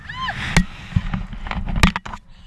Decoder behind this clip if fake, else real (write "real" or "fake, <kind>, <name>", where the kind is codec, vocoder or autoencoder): real